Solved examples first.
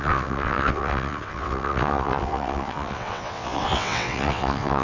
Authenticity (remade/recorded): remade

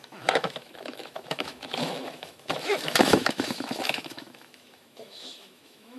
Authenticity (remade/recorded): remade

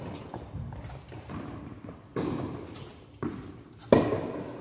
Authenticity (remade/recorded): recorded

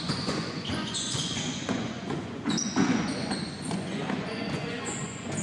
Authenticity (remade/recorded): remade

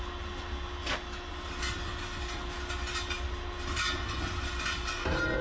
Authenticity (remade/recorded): recorded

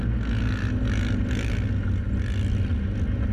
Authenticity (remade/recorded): recorded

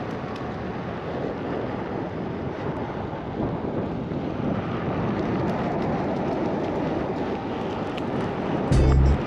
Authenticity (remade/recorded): recorded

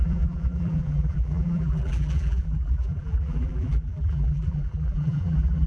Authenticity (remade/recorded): remade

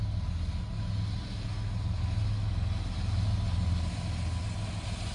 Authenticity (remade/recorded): recorded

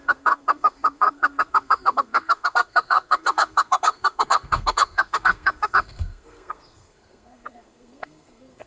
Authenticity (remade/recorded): remade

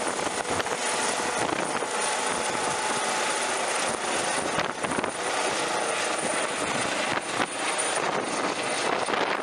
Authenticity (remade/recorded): recorded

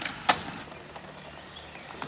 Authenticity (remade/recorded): recorded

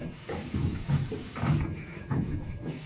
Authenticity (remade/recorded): remade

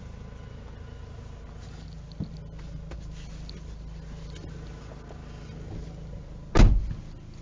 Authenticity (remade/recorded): recorded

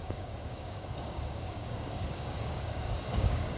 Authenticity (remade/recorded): remade